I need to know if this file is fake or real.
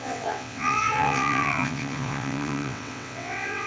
fake